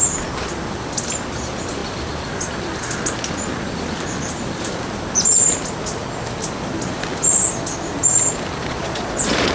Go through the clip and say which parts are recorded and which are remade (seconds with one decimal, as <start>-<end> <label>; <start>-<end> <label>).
0.0-8.6 recorded; 8.6-9.5 remade